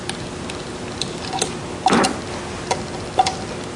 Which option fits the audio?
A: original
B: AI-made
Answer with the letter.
A